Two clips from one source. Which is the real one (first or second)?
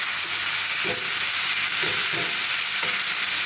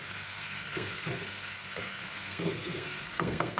first